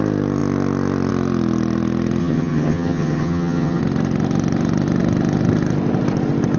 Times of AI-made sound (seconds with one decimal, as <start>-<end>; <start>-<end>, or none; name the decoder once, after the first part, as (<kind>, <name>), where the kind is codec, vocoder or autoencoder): 2.2-3.8 (vocoder, HiFi-GAN)